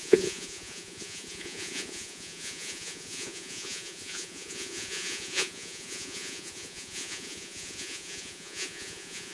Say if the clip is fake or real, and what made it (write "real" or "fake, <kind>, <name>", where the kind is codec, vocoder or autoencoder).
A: fake, vocoder, Vocos